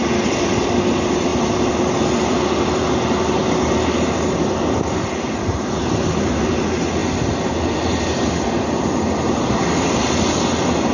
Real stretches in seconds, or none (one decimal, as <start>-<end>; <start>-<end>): 0.0-10.9